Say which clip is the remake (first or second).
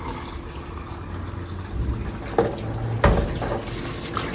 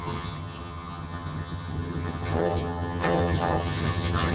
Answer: second